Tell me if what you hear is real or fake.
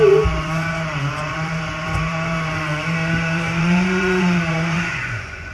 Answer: fake